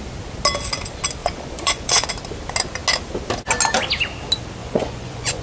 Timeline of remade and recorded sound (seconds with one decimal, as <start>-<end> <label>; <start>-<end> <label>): 0.0-1.2 recorded; 1.2-2.1 remade; 2.1-4.6 recorded; 4.6-5.4 remade